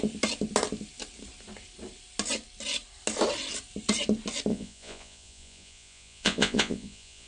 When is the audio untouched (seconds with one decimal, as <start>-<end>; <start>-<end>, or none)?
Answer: 0.0-4.5